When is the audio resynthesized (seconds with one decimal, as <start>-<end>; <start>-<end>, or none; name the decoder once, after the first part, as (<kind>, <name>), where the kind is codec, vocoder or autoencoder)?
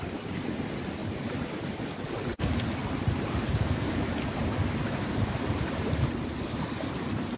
1.0-1.6 (vocoder, BigVGAN v2); 2.8-7.4